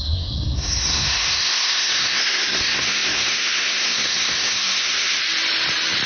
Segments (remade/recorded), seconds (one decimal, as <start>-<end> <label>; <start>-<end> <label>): 0.0-5.2 remade; 5.2-6.1 recorded